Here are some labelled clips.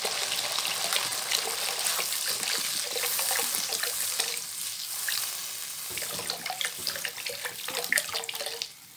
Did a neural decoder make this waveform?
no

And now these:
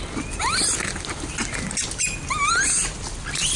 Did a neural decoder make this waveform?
no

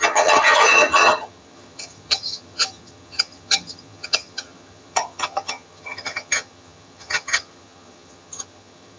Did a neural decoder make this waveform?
yes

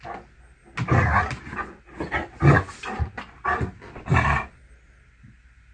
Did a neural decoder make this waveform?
no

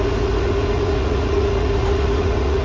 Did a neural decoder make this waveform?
yes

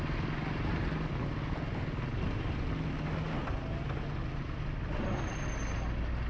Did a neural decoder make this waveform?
no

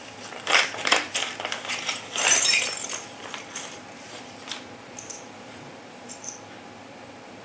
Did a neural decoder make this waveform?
yes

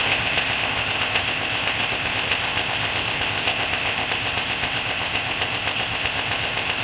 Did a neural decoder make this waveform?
yes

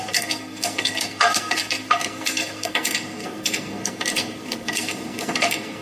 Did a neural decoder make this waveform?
yes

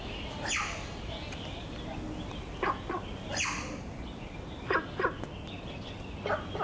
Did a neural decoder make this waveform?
no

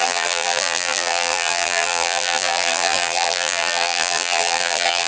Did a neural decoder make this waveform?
yes